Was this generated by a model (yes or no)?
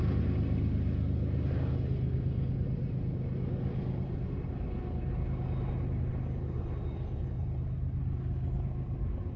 no